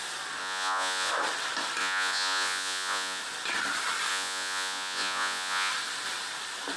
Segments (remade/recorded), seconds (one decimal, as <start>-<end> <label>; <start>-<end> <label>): 0.0-0.4 recorded; 0.4-1.1 remade; 1.1-1.8 recorded; 1.8-3.2 remade; 3.2-4.1 recorded; 4.1-5.7 remade; 5.7-6.8 recorded